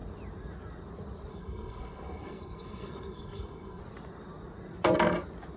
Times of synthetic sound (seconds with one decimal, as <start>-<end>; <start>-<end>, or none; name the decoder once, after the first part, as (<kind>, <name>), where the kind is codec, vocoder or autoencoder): 1.3-3.8 (codec, SNAC)